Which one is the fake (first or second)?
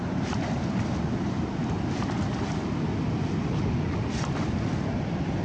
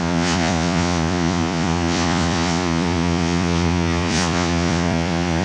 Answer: second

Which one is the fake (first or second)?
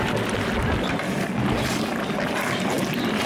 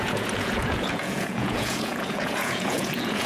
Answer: second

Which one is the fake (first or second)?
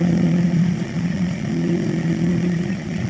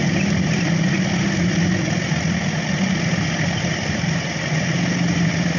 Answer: first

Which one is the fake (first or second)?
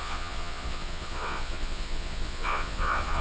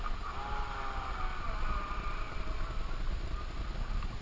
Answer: first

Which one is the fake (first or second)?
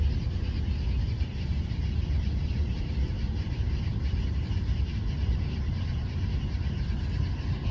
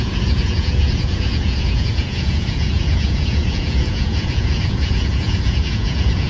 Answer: second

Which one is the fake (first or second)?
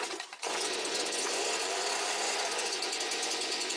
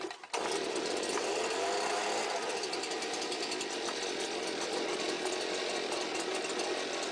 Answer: first